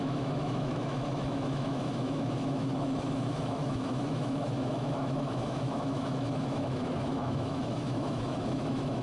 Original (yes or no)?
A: no